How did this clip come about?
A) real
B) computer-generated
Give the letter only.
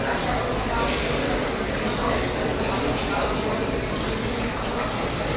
A